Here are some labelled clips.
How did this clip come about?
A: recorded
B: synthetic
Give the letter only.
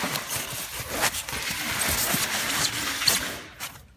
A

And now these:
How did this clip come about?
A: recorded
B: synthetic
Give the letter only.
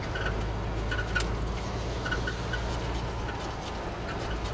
A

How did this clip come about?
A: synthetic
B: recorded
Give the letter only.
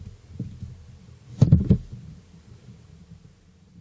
B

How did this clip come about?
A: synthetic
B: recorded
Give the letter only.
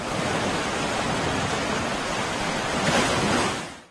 B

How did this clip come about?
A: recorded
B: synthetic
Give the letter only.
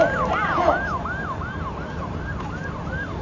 A